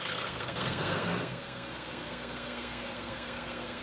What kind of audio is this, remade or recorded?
remade